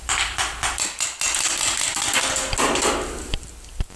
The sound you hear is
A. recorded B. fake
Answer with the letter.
A